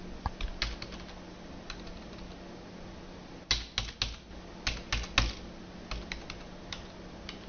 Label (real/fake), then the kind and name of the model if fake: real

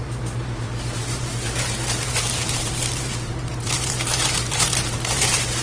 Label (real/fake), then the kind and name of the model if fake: fake, vocoder, BigVGAN v2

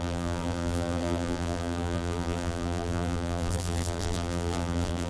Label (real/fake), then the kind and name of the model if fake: fake, vocoder, BigVGAN v2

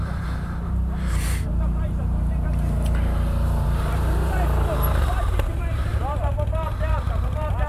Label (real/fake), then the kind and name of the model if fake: fake, vocoder, BigVGAN v2